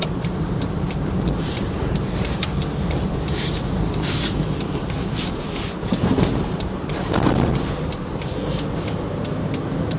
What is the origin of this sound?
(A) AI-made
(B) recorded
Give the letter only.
A